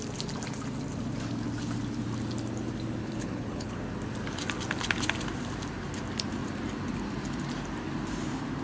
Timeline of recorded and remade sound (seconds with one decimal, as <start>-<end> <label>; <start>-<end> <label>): 0.0-3.0 recorded; 3.0-3.7 remade; 3.7-8.6 recorded